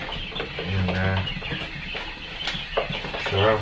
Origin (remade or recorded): recorded